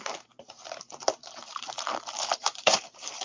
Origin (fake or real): fake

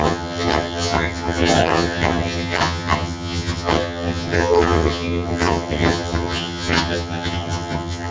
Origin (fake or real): fake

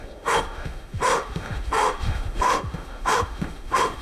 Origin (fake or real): fake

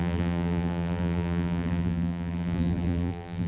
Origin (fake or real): fake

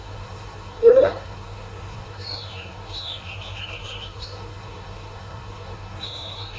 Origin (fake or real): fake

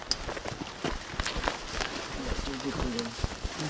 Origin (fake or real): real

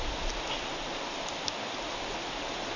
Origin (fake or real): real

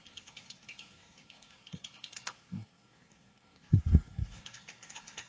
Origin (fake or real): fake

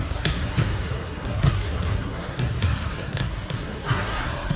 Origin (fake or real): fake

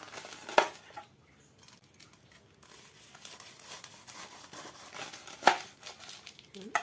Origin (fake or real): real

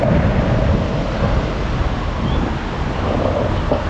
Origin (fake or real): real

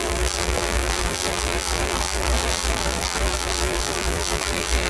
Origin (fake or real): fake